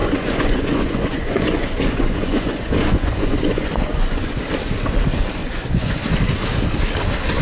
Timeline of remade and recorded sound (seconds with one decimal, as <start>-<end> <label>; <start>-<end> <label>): 0.0-4.4 remade; 4.4-5.4 recorded; 5.4-6.0 remade; 6.0-7.4 recorded